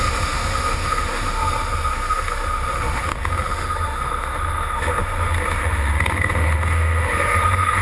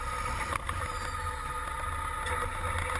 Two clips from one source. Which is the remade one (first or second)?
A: first